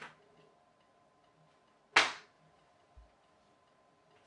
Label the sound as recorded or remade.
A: recorded